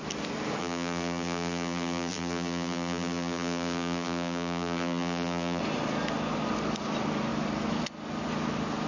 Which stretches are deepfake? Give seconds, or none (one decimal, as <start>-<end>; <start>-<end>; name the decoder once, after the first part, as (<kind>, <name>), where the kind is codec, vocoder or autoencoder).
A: 0.6-5.6 (vocoder, BigVGAN v2)

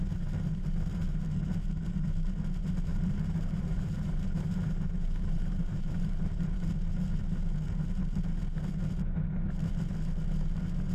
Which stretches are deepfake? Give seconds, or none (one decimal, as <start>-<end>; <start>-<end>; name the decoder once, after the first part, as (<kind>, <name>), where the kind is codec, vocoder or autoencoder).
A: 2.9-6.8 (vocoder, BigVGAN v2)

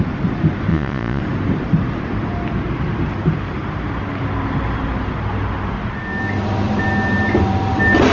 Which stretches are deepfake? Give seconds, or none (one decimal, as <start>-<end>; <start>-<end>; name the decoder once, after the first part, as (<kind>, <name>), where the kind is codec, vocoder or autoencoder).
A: 0.7-1.2 (vocoder, Vocos)

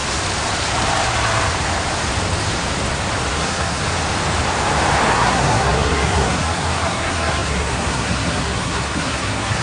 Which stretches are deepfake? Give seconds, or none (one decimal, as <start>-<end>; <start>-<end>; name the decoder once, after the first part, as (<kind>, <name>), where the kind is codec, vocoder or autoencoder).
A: 3.3-3.8 (codec, SNAC); 5.1-9.6